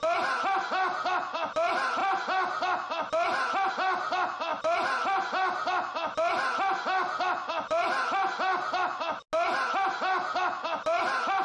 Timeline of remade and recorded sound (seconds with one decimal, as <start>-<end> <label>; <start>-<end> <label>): 0.0-11.4 recorded